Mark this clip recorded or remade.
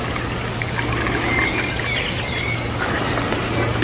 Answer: recorded